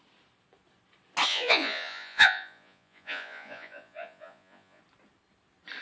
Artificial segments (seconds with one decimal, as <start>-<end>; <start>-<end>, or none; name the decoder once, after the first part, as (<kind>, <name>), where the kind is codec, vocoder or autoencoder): 1.3-4.8 (vocoder, Vocos)